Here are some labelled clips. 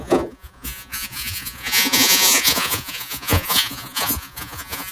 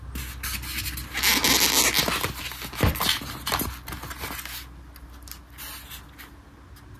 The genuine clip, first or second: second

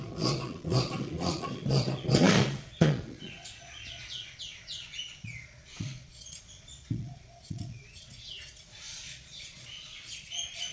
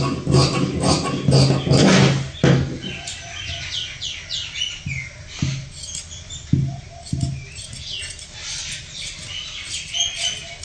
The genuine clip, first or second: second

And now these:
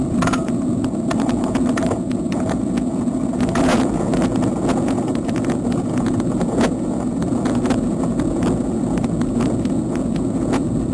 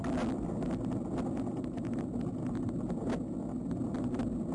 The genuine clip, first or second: second